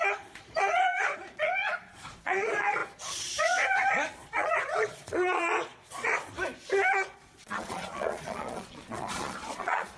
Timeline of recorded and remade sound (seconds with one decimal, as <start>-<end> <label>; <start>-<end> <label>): 0.0-6.3 remade; 6.3-6.9 recorded; 6.9-10.0 remade

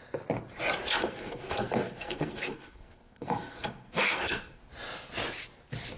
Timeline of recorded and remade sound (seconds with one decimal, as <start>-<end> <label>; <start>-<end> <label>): 0.0-1.0 recorded; 1.0-4.6 remade; 4.6-6.0 recorded

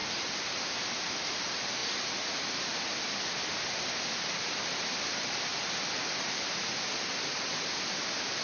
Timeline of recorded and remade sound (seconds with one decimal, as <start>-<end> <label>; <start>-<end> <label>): 0.0-0.8 recorded; 0.8-1.8 remade; 1.8-2.3 recorded; 2.3-5.5 remade; 5.5-7.3 recorded; 7.3-8.4 remade

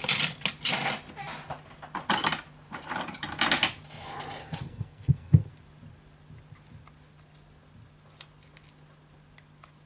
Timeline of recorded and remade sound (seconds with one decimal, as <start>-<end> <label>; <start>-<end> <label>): 0.0-4.4 recorded; 4.4-5.5 remade; 5.5-9.9 recorded

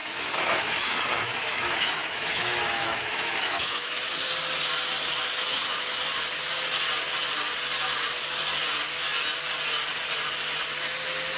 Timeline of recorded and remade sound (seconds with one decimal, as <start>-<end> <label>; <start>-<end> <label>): 0.0-4.3 remade; 4.3-5.3 recorded; 5.3-6.0 remade; 6.0-11.4 recorded

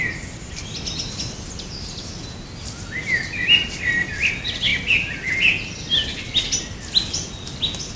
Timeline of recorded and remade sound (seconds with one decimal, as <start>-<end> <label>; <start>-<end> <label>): 0.0-8.0 recorded